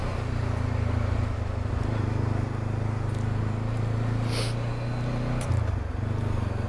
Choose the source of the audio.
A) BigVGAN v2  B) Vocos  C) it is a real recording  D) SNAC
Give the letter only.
C